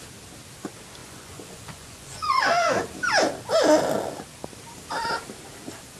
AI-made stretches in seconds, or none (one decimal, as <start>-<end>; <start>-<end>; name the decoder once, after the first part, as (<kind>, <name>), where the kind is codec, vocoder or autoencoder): 1.0-2.9 (vocoder, Vocos)